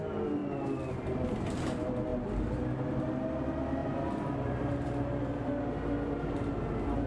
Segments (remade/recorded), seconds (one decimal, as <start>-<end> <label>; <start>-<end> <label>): 0.0-3.8 recorded; 3.8-4.7 remade; 4.7-7.1 recorded